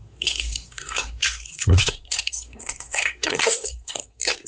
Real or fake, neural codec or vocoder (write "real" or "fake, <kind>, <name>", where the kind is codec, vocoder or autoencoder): fake, codec, SNAC